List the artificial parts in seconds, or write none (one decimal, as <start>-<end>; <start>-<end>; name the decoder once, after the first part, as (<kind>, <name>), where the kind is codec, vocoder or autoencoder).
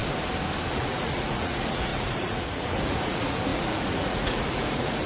0.7-5.1 (vocoder, Vocos)